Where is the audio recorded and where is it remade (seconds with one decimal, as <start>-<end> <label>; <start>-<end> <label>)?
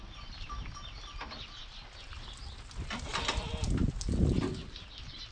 0.0-5.3 recorded